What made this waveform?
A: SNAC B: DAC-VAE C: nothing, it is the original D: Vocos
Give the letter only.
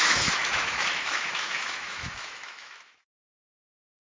B